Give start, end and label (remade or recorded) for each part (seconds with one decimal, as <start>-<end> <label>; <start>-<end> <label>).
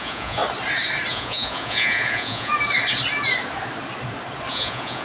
0.0-0.4 remade; 0.4-1.1 recorded; 1.1-2.5 remade; 2.5-4.5 recorded; 4.5-5.0 remade